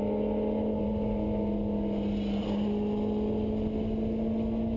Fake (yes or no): no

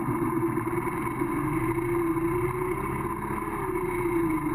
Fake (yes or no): no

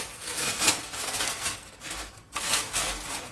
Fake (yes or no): yes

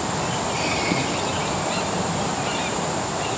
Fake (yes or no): yes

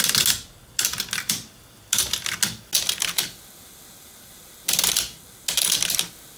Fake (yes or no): no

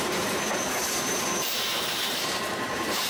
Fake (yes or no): yes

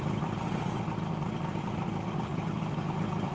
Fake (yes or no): yes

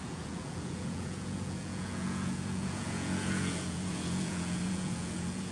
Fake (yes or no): yes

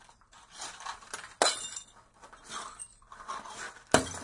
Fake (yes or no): no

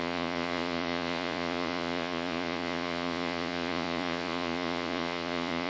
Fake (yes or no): yes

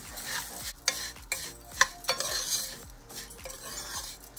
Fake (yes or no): no